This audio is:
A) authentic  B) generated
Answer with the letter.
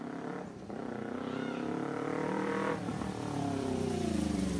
B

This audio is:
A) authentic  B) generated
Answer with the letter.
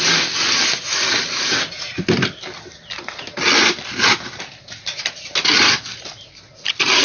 A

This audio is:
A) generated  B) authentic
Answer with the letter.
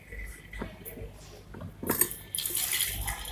B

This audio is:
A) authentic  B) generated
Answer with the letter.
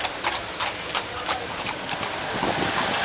B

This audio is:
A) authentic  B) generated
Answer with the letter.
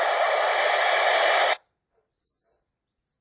A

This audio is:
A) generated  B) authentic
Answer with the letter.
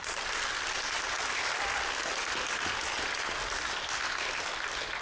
B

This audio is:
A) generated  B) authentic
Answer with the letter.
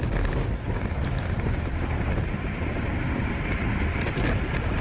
A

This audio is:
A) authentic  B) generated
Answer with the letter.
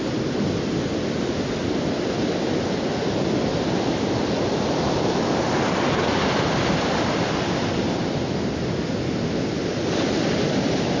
A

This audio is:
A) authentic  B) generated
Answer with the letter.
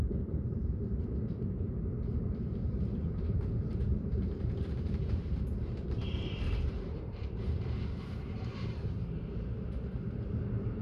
B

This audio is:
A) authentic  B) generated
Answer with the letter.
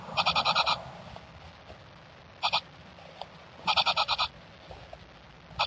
A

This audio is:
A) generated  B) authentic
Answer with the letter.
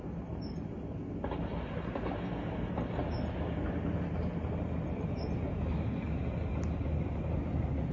B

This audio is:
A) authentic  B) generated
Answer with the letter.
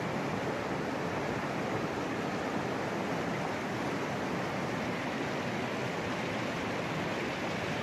A